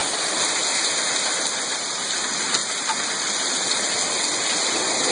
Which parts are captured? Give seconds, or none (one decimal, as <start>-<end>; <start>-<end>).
0.0-5.1